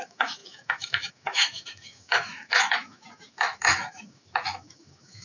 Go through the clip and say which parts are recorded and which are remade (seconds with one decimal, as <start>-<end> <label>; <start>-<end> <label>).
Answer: 0.0-5.2 remade